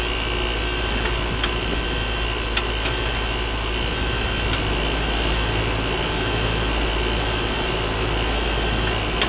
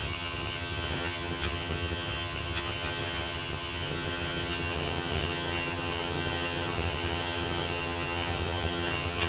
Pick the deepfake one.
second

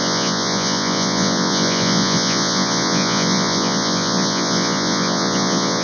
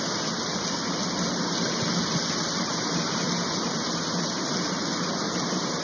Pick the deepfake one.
first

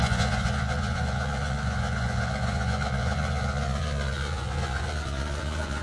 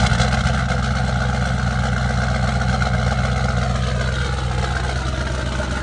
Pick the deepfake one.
first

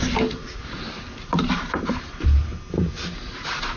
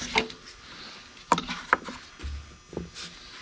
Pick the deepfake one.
first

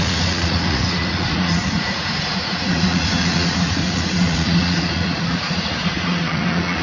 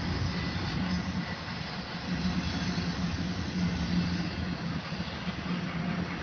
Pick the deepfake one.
first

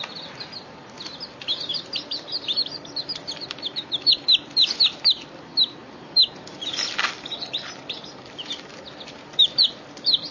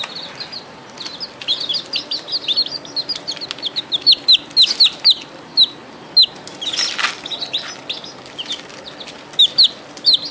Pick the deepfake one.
first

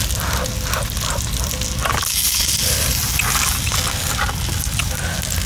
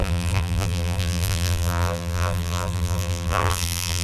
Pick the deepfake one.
second